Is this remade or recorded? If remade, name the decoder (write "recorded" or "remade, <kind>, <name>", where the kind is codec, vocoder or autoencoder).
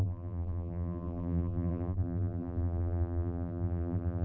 remade, vocoder, BigVGAN v2